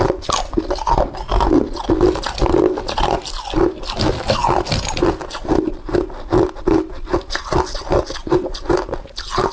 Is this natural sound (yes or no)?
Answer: yes